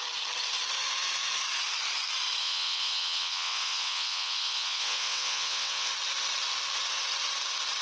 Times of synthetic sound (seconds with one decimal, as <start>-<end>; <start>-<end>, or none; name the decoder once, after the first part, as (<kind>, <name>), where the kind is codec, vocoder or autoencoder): 2.4-5.9 (vocoder, WaveNeXt)

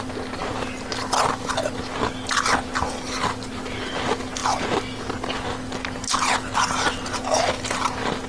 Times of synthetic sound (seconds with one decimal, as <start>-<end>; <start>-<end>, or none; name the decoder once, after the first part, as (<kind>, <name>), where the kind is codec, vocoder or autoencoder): none

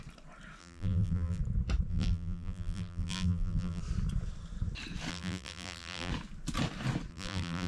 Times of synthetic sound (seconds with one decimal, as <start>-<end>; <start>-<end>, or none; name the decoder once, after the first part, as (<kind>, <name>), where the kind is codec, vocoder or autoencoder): 0.6-1.4 (vocoder, BigVGAN v2); 1.9-3.8; 5.1-6.1; 7.1-7.7

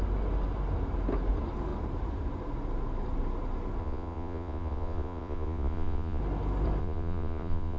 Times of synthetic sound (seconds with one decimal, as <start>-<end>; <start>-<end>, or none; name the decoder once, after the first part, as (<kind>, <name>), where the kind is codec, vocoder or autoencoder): 3.8-6.2 (vocoder, Vocos); 6.8-7.8